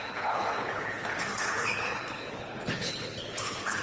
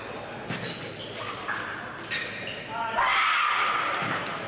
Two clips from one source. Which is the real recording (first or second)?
second